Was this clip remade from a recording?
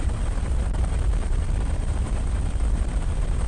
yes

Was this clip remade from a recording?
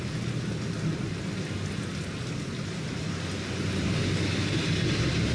no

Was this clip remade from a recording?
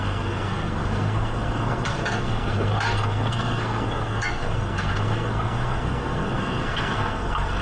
yes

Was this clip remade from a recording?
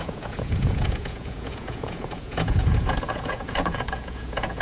yes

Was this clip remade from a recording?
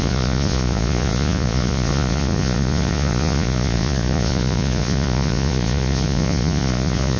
yes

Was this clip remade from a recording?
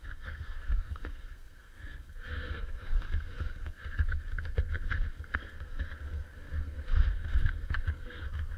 yes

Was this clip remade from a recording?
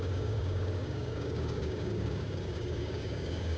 yes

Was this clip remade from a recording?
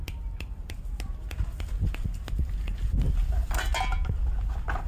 no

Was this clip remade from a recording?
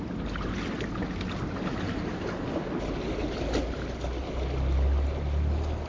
no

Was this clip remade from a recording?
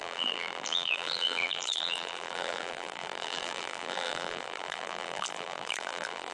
yes